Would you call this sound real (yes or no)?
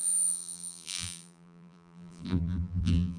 no